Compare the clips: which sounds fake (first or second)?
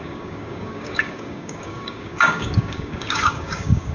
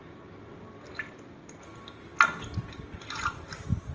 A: first